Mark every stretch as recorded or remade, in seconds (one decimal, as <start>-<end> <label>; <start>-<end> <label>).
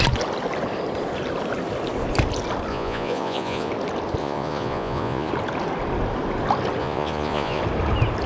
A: 0.0-2.7 recorded; 2.7-3.7 remade; 3.7-4.2 recorded; 4.2-5.3 remade; 5.3-6.8 recorded; 6.8-7.6 remade; 7.6-8.3 recorded